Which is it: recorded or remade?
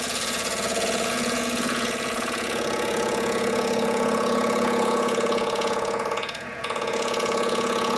remade